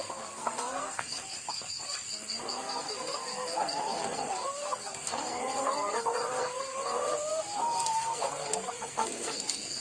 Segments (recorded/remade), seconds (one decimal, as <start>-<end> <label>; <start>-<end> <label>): 0.0-9.8 remade